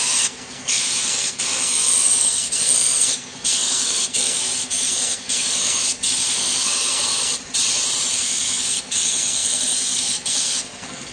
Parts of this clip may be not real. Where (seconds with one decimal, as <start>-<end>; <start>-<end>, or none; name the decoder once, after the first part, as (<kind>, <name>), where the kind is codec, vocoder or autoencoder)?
0.0-7.3 (codec, SNAC); 8.1-11.1